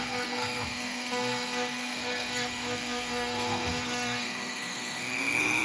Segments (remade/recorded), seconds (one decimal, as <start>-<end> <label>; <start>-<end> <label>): 0.0-5.6 remade